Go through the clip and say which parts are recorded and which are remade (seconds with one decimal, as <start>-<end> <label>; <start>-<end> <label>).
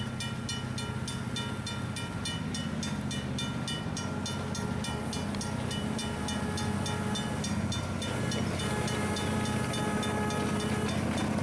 0.0-11.4 recorded